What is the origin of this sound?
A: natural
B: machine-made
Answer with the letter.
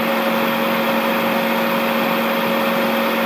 A